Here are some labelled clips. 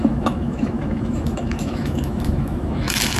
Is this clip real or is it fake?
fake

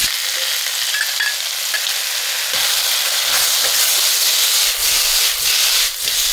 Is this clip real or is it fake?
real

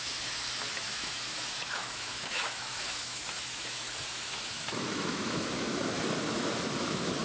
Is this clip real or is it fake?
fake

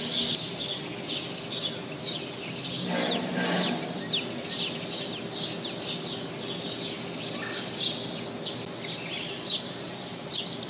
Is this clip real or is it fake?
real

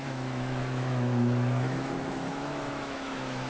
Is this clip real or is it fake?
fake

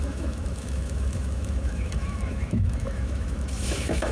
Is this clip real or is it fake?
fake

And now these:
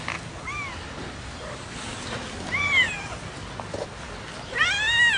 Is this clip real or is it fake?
real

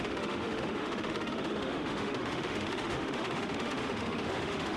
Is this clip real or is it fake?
fake